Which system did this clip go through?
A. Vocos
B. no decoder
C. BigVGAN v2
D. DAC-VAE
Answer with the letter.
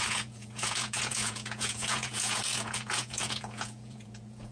A